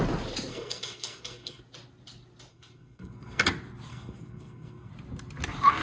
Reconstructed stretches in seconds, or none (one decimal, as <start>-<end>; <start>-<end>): 0.5-1.6; 2.5-3.4; 3.9-4.9